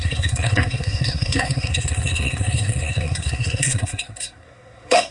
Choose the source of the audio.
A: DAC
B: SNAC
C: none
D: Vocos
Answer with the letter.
B